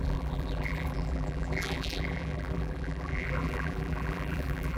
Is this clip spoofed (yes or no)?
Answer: yes